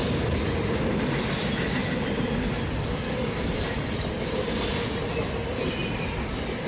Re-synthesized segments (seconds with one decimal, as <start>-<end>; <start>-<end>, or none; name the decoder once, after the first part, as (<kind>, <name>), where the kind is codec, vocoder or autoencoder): none